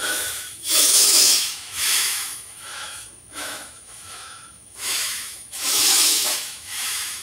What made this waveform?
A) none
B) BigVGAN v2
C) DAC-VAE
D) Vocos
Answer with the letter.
C